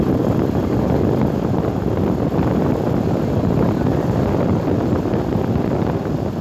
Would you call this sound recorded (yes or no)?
yes